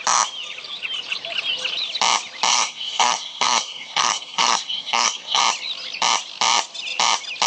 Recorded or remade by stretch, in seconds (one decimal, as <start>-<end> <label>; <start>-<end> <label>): 0.0-2.5 recorded; 2.5-5.4 remade; 5.4-7.5 recorded

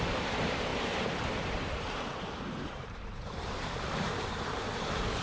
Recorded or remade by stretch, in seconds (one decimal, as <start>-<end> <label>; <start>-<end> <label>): 0.0-5.2 remade

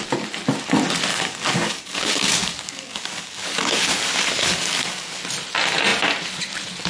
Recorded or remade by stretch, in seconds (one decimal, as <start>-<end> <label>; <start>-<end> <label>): 0.0-1.1 recorded; 1.1-5.2 remade; 5.2-6.9 recorded

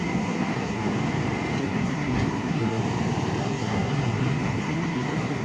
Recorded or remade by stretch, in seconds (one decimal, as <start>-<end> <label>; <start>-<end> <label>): 0.0-0.9 remade; 0.9-1.6 recorded; 1.6-2.8 remade; 2.8-3.4 recorded; 3.4-5.4 remade

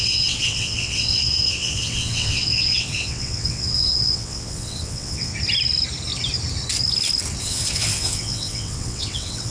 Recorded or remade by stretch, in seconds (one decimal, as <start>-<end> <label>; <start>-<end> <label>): 0.0-5.3 remade; 5.3-7.4 recorded; 7.4-9.5 remade

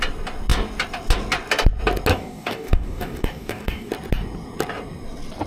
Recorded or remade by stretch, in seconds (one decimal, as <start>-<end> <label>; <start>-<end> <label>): 0.0-2.1 recorded; 2.1-3.9 remade; 3.9-5.5 recorded

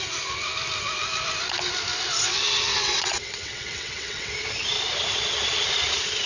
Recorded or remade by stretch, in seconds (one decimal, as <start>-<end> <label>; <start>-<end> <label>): 0.0-2.7 recorded; 2.7-4.3 remade; 4.3-6.3 recorded

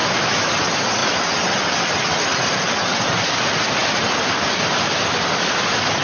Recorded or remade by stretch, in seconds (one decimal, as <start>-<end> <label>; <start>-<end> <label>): 0.0-0.5 remade; 0.5-6.0 recorded